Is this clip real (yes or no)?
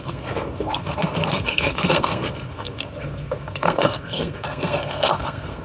no